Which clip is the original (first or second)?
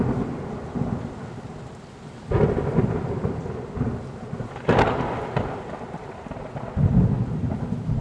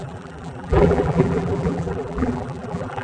first